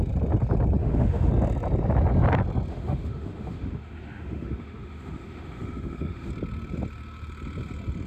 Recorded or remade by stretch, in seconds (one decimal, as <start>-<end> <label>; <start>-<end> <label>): 0.0-0.8 recorded; 0.8-1.3 remade; 1.3-2.7 recorded; 2.7-6.3 remade; 6.3-8.1 recorded